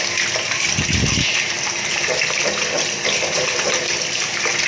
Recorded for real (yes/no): yes